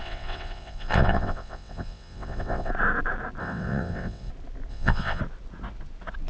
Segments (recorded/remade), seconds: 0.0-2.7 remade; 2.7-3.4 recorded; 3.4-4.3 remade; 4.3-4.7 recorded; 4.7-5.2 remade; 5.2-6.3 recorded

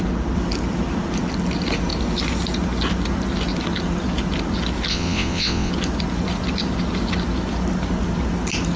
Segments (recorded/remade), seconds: 0.0-4.9 recorded; 4.9-5.7 remade; 5.7-8.8 recorded

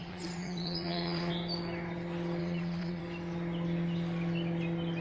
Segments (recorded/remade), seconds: 0.0-1.3 remade; 1.3-2.4 recorded; 2.4-3.0 remade; 3.0-5.0 recorded

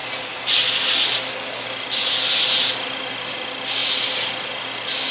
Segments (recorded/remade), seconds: 0.0-5.1 recorded

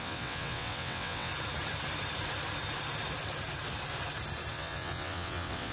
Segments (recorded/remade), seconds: 0.0-1.3 remade; 1.3-4.5 recorded; 4.5-5.7 remade

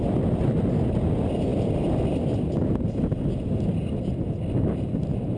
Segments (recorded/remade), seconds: 0.0-5.4 recorded

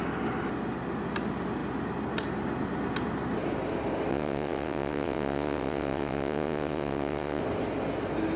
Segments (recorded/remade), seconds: 0.0-4.1 recorded; 4.1-7.4 remade; 7.4-8.4 recorded